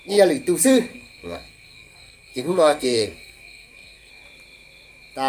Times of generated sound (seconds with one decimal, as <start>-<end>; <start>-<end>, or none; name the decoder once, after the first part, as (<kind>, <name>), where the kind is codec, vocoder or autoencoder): 0.9-4.1 (codec, SNAC)